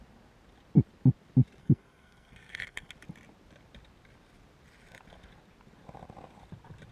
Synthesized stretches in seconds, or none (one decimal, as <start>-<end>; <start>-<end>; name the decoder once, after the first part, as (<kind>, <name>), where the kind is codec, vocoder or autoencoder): 1.6-2.9 (codec, SNAC)